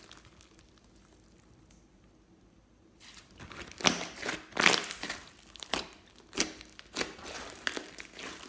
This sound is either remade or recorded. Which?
recorded